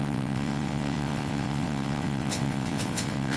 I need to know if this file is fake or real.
fake